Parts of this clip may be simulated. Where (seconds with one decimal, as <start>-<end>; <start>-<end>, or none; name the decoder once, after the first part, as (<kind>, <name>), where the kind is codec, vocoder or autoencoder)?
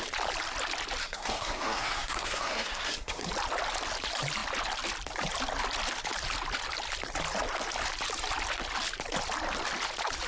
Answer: 1.0-3.3 (codec, SNAC)